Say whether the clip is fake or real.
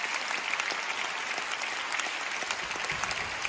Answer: real